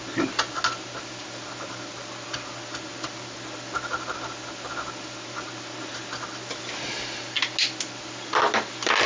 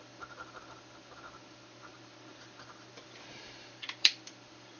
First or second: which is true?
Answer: first